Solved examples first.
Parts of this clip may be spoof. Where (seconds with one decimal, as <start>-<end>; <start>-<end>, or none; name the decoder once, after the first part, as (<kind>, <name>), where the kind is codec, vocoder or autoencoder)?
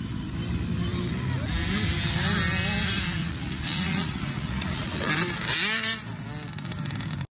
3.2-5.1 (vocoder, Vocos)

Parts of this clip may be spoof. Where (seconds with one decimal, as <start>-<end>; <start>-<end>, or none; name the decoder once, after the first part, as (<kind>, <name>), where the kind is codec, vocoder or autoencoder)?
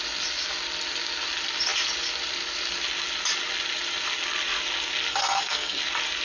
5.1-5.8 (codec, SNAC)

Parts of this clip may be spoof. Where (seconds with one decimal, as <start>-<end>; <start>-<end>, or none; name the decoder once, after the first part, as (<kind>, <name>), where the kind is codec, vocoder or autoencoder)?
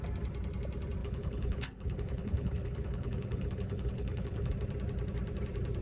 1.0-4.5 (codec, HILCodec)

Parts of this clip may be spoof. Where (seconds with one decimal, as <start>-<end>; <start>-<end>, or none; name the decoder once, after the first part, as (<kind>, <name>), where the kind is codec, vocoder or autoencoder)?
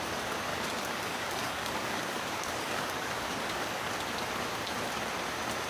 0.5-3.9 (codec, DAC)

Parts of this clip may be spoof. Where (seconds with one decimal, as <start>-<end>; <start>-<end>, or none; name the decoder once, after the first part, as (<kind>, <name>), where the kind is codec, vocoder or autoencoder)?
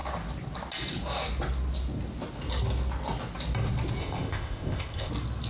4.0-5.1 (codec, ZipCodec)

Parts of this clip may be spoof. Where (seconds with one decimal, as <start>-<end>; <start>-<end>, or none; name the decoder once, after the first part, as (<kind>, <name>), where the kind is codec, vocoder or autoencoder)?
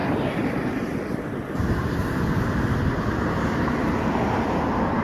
0.0-3.0 (vocoder, BigVGAN v2)